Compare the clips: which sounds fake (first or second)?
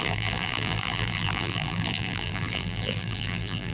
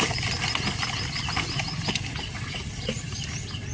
first